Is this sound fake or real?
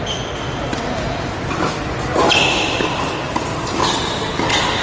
real